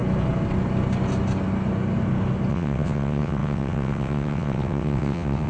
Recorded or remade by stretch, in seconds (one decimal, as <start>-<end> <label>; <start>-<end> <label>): 0.0-2.5 recorded; 2.5-5.5 remade